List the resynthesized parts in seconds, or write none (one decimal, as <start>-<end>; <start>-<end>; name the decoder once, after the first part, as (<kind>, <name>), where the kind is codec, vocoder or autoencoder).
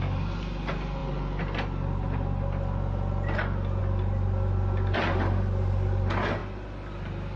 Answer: none